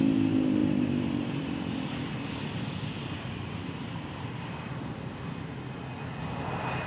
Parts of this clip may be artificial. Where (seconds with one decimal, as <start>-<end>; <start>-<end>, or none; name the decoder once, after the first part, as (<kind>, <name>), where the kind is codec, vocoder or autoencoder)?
0.6-4.7 (vocoder, BigVGAN v2)